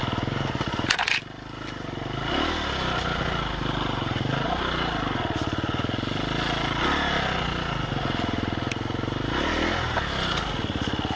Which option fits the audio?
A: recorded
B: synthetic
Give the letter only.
A